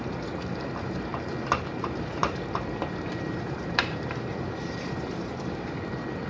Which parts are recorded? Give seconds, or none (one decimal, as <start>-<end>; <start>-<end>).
1.1-1.7